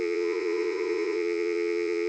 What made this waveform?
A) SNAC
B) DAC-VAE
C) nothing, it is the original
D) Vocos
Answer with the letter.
D